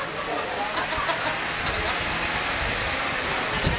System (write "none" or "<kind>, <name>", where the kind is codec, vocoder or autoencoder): none